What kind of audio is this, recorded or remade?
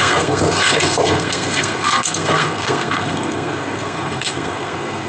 remade